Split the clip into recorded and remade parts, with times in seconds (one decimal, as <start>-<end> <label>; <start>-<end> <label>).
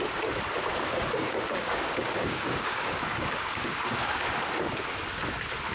0.0-0.7 recorded; 0.7-4.1 remade; 4.1-5.7 recorded